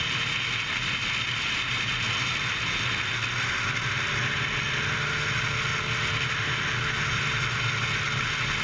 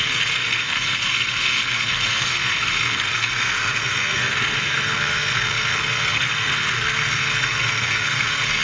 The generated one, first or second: second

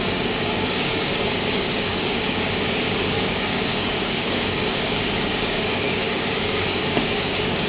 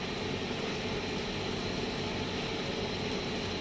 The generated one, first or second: first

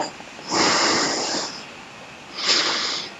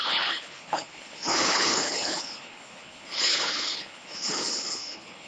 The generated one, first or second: second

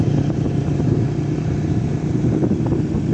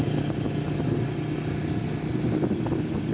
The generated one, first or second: first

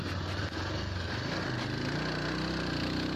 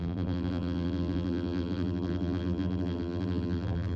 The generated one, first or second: second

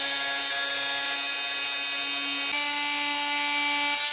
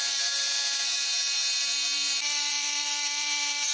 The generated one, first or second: second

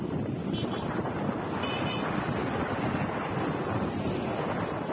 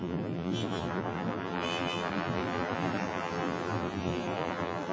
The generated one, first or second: second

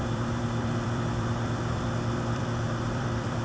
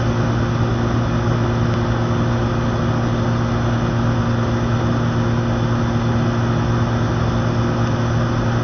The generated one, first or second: first